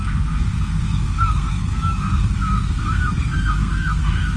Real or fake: fake